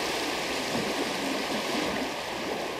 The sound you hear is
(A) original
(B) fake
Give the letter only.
A